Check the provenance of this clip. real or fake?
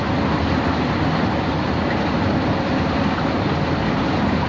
real